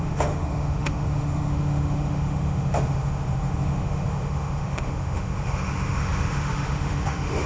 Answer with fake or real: fake